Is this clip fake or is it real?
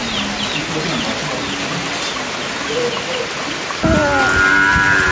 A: real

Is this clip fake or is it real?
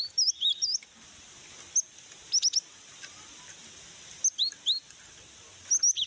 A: real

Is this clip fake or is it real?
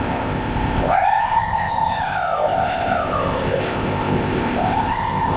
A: fake